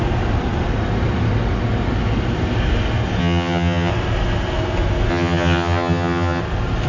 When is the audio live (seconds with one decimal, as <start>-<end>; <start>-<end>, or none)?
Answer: 0.0-3.2; 3.9-5.1; 6.4-6.9